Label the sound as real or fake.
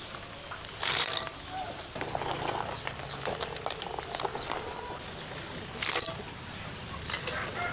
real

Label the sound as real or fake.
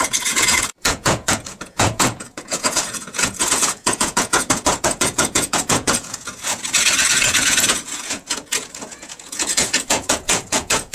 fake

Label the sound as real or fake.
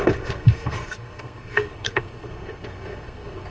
fake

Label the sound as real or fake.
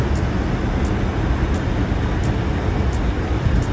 real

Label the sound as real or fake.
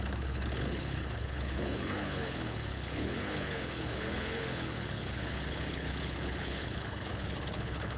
fake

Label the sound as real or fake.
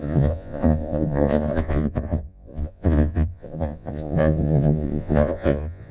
fake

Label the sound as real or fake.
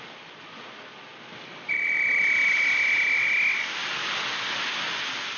real